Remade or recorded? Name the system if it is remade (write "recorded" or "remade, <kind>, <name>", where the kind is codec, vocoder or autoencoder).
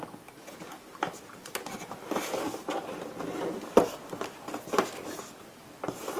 recorded